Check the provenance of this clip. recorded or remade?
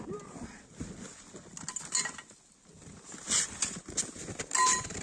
recorded